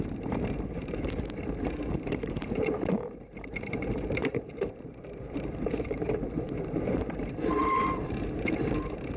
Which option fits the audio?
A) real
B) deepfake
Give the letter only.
B